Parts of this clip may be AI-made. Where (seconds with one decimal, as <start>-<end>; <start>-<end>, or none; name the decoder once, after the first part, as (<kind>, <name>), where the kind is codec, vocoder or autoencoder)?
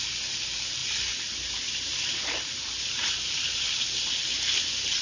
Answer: 0.8-3.8 (vocoder, BigVGAN v2)